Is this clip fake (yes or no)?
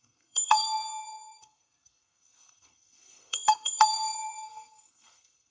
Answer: yes